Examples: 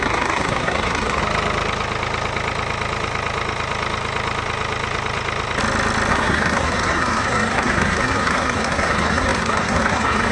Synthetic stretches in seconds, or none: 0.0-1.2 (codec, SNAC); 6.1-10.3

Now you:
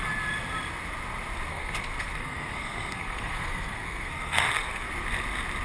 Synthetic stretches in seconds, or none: 1.5-4.9 (codec, SNAC)